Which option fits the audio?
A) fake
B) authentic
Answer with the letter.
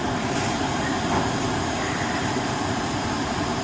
A